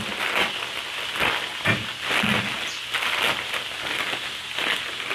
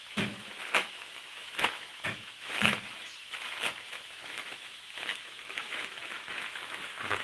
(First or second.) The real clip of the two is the first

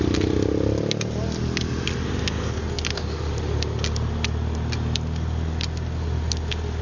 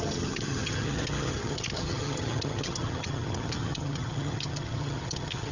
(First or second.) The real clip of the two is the first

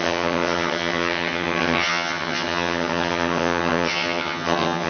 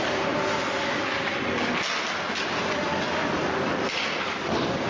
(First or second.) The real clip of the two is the second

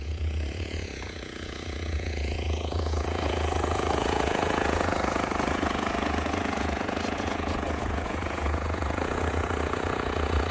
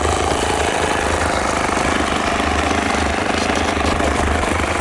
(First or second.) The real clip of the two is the second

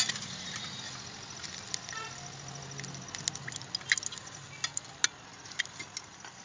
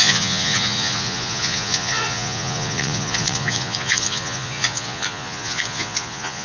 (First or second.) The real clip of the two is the first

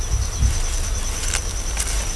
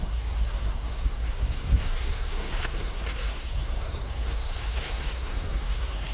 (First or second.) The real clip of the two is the first